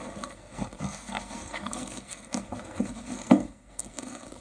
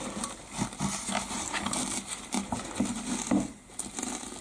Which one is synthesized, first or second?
first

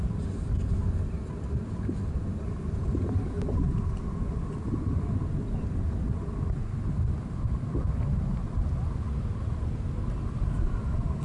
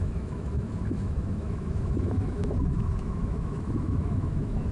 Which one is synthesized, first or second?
second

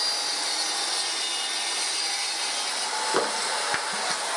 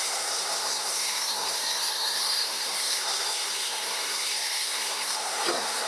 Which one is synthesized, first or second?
second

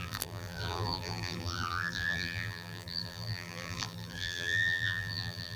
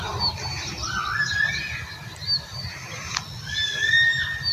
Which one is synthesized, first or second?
first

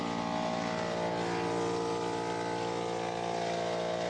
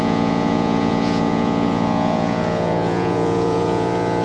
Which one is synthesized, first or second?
second